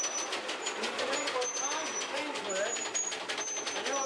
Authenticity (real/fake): real